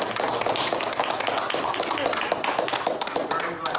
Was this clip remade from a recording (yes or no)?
no